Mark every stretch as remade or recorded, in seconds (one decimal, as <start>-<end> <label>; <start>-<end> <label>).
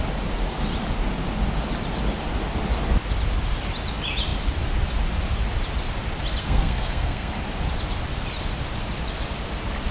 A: 0.0-6.4 recorded; 6.4-7.3 remade; 7.3-9.9 recorded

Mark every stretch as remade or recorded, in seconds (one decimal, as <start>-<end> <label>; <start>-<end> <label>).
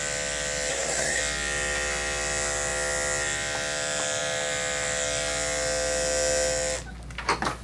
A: 0.0-0.7 recorded; 0.7-1.2 remade; 1.2-7.6 recorded